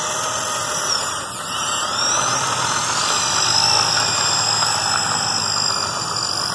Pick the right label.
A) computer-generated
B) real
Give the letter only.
B